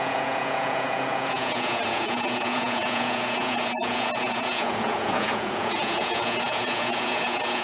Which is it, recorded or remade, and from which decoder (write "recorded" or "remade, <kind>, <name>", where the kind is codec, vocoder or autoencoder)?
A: remade, vocoder, Vocos